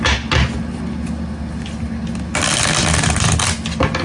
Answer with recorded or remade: recorded